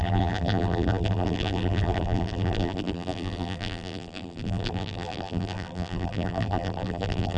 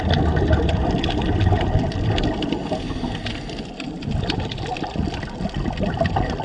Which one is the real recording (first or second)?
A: second